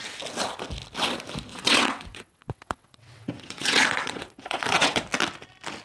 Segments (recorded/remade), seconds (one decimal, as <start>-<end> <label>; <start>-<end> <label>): 0.0-1.5 recorded; 1.5-5.0 remade; 5.0-5.8 recorded